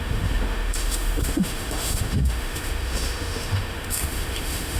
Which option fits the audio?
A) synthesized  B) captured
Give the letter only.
A